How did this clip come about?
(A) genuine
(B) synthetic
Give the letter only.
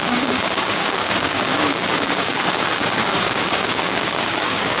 B